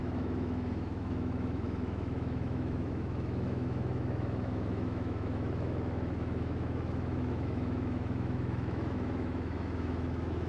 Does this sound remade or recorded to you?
remade